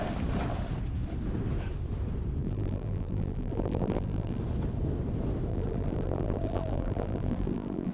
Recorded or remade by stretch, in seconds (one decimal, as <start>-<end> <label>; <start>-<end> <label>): 0.0-2.4 recorded; 2.4-4.4 remade; 4.4-5.5 recorded; 5.5-7.9 remade